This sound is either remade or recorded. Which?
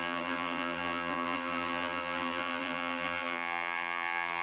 remade